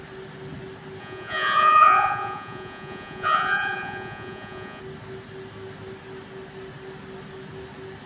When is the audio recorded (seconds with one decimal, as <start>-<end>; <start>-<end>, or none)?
0.0-1.0; 4.8-8.1